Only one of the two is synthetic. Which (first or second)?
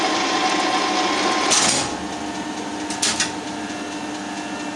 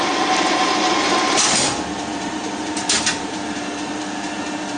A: second